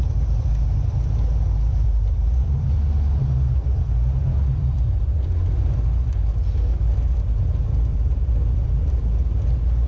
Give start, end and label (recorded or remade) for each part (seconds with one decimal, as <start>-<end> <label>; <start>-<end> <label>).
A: 0.0-4.5 recorded; 4.5-5.2 remade; 5.2-6.7 recorded; 6.7-7.2 remade; 7.2-7.9 recorded; 7.9-9.0 remade; 9.0-9.9 recorded